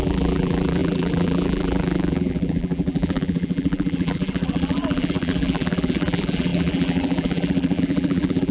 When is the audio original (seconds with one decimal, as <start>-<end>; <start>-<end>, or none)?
none

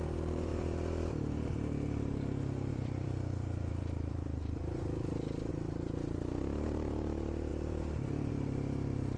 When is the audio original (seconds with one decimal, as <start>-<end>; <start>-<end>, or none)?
0.0-0.5; 1.7-2.7; 5.5-7.5; 8.3-9.2

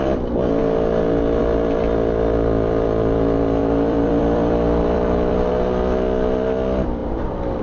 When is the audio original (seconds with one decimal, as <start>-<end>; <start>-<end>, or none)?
0.0-3.6; 5.5-7.6

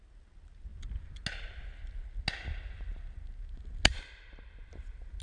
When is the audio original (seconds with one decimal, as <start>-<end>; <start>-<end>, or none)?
0.0-5.2